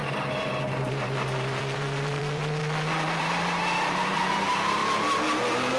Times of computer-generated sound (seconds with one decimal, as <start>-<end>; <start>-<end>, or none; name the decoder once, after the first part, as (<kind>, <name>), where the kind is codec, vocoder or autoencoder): 0.0-2.6 (vocoder, BigVGAN v2); 3.2-4.8